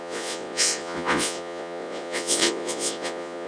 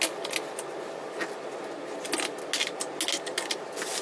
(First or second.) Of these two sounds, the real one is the second